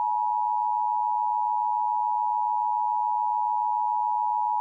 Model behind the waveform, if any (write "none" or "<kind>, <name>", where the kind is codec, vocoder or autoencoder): none